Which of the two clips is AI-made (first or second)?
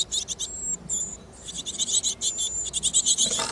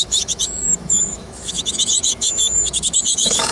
second